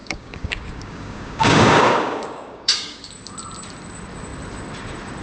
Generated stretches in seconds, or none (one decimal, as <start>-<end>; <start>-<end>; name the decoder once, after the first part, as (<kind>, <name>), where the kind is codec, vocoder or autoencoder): 0.0-3.1 (codec, DAC)